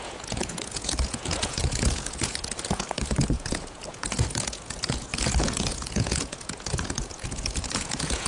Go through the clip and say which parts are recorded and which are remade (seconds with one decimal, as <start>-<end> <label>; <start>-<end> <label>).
0.0-8.3 remade